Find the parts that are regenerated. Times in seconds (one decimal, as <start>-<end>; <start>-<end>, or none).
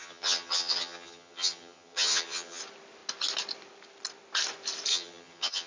0.0-2.6; 4.9-5.7